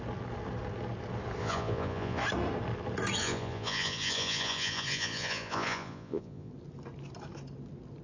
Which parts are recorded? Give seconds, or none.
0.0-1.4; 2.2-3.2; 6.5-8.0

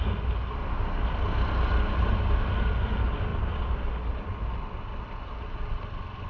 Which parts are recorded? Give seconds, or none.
0.0-3.3; 3.9-6.3

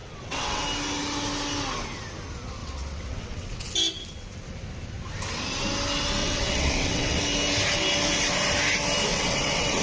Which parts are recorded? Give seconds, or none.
0.6-2.6; 3.7-6.2; 7.2-9.1

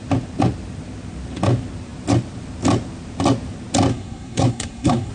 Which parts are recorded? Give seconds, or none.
0.0-3.9

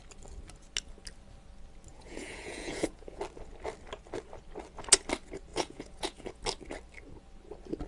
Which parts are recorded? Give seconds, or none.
0.0-1.9; 3.2-5.5; 6.4-7.9